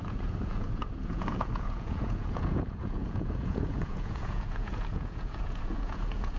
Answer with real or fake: fake